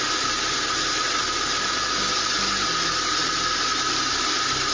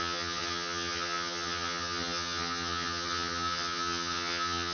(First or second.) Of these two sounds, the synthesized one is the second